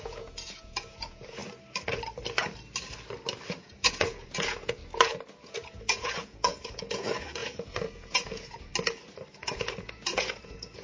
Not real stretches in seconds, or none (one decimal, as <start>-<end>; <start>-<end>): 0.0-1.4; 3.6-4.8; 5.3-8.7; 9.3-10.8

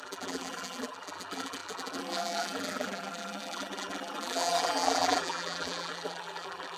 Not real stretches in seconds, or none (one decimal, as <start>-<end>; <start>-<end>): 0.0-6.8

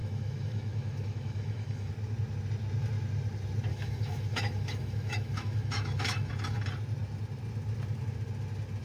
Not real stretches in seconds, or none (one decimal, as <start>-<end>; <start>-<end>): 0.0-1.9; 3.7-6.3

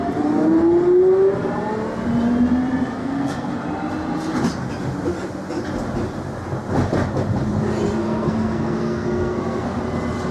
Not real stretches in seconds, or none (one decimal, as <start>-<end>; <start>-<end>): 3.0-3.5; 8.0-9.8

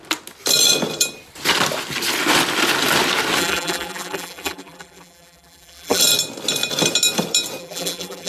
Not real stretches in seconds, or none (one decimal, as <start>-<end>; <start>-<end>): 3.4-6.0; 7.6-8.3

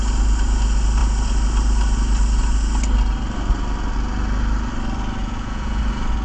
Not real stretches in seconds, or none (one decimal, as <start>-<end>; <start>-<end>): 5.2-5.8